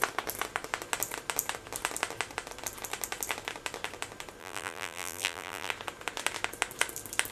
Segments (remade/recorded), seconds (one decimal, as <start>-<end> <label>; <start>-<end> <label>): 0.0-4.4 recorded; 4.4-5.7 remade; 5.7-7.3 recorded